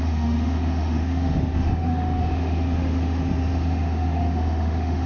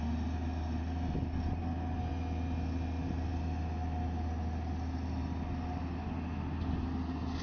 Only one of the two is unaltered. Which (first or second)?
second